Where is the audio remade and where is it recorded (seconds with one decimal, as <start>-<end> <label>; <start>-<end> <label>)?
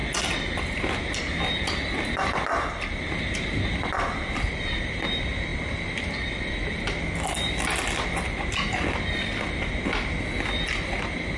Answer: 0.0-11.4 recorded